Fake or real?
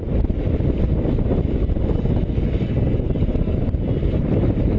real